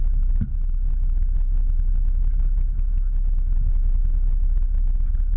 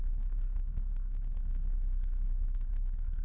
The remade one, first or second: second